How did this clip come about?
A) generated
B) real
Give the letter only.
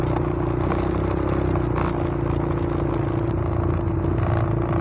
B